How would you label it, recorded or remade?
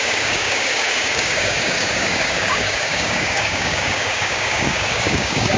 remade